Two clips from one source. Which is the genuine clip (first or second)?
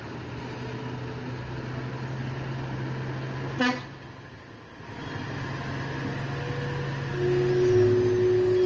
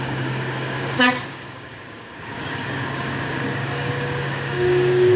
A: first